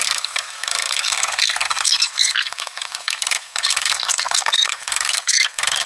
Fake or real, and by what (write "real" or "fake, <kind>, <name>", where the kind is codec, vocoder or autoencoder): fake, codec, SNAC